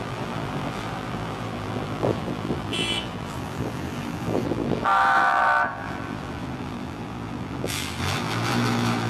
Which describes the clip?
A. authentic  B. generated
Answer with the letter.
B